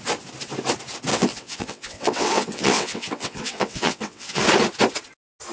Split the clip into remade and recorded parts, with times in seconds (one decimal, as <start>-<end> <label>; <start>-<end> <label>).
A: 0.0-1.1 recorded; 1.1-4.4 remade; 4.4-5.5 recorded

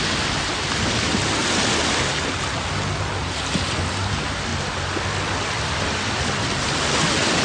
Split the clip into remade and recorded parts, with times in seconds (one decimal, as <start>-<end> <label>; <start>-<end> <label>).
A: 0.0-7.4 recorded

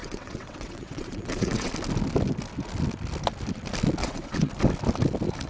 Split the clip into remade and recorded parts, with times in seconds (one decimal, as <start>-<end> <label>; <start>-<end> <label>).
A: 0.0-1.7 remade; 1.7-4.0 recorded; 4.0-4.5 remade; 4.5-5.5 recorded

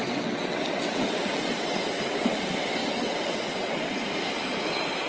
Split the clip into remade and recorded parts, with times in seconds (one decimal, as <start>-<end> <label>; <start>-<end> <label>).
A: 0.0-4.0 remade; 4.0-5.1 recorded

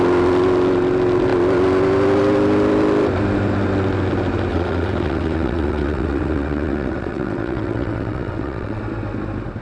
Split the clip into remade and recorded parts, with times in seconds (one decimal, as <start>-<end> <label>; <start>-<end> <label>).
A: 0.0-4.5 recorded; 4.5-8.8 remade; 8.8-9.6 recorded

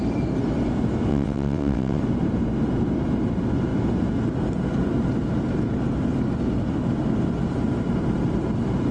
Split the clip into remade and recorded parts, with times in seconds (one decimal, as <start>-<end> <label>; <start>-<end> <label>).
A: 0.0-1.1 recorded; 1.1-2.0 remade; 2.0-8.9 recorded